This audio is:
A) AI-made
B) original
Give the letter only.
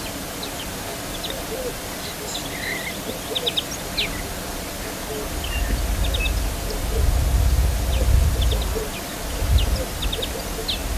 B